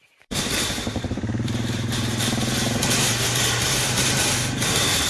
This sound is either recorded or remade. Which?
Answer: remade